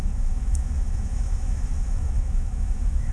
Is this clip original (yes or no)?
no